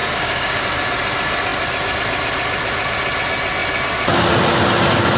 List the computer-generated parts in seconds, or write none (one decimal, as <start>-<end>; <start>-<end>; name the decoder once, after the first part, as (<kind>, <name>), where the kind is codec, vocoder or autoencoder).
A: 0.0-0.6 (codec, DAC)